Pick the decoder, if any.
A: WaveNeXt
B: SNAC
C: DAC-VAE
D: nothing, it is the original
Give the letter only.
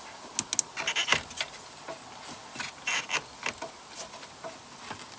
D